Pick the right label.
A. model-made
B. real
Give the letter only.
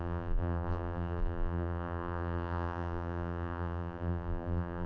A